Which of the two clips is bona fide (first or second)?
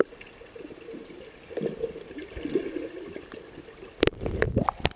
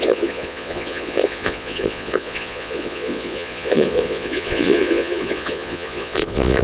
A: first